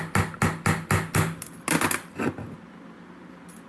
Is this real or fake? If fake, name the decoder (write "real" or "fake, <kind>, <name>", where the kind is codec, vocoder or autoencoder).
real